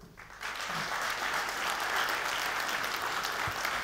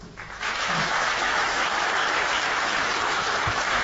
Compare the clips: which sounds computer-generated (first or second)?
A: second